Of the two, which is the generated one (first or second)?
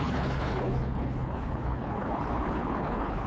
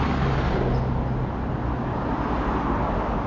first